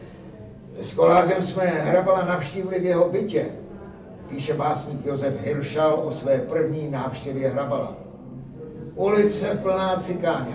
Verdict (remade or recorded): recorded